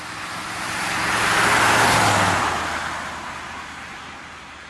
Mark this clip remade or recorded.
recorded